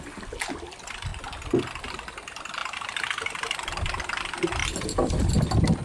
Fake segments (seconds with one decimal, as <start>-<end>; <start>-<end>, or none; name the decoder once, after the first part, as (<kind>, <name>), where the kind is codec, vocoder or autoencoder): none